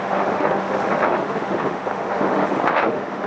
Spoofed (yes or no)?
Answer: yes